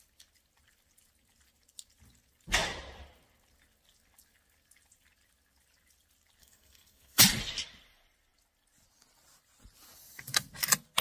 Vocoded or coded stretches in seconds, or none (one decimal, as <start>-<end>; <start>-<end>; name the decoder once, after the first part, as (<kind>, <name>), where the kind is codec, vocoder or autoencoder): 6.4-7.2 (codec, SNAC)